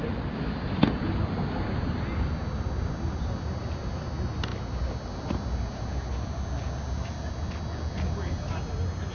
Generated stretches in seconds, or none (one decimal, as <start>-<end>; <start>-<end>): none